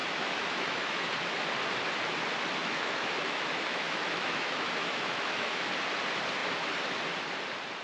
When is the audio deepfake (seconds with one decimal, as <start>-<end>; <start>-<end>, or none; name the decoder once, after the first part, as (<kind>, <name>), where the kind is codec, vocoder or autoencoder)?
0.0-1.0 (autoencoder, DAC-VAE); 2.6-5.7